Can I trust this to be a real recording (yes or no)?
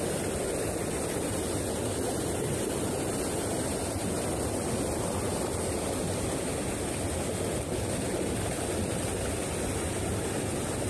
yes